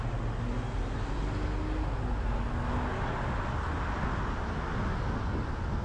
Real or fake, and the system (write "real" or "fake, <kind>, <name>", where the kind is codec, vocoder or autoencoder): real